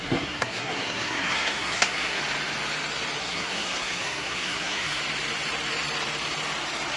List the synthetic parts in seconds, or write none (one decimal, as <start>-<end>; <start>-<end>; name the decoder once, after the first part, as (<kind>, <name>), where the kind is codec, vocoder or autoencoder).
0.0-2.2 (codec, SNAC); 3.2-5.0